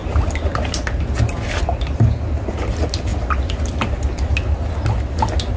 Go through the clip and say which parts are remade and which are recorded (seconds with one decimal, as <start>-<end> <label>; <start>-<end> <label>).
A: 0.0-5.6 recorded